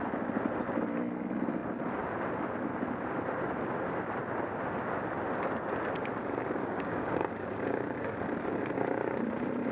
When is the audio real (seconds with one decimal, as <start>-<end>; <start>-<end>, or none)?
0.0-6.6; 8.1-9.7